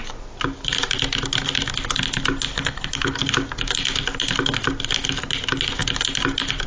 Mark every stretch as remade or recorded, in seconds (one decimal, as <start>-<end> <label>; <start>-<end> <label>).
0.0-2.5 recorded; 2.5-3.2 remade; 3.2-6.7 recorded